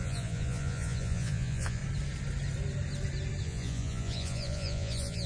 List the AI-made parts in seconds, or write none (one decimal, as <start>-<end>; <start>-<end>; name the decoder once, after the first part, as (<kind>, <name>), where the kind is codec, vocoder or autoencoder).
0.0-1.8 (vocoder, Vocos); 3.4-5.3